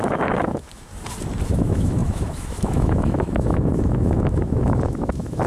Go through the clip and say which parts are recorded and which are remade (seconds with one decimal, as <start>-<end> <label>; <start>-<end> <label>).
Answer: 0.0-0.9 remade; 0.9-1.5 recorded; 1.5-5.5 remade